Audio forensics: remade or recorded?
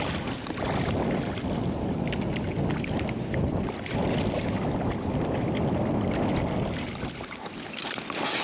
recorded